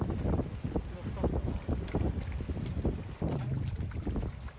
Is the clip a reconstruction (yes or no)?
no